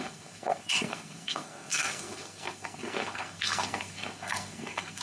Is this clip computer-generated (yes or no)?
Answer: yes